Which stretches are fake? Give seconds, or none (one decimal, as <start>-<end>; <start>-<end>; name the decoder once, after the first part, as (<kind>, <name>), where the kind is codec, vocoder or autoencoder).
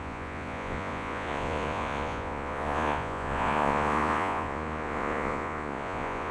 0.0-6.3 (vocoder, Vocos)